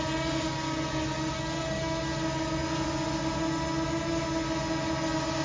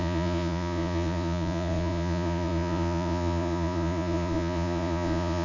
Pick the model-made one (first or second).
second